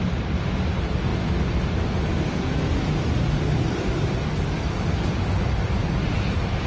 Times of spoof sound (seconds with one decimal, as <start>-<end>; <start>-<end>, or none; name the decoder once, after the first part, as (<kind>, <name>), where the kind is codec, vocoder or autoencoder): none